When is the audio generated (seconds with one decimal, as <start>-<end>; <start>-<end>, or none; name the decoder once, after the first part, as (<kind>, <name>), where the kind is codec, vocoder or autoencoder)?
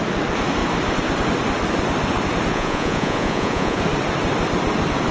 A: 2.5-3.8 (vocoder, Vocos)